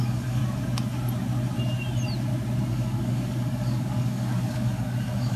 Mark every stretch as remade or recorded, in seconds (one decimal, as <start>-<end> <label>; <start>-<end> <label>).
0.0-0.4 remade; 0.4-2.7 recorded; 2.7-5.4 remade